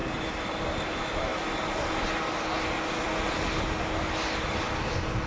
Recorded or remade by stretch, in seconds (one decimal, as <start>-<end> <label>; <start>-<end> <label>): 0.0-0.6 remade; 0.6-5.3 recorded